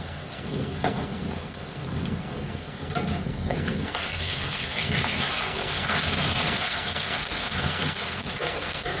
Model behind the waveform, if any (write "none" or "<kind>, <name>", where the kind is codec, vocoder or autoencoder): codec, SNAC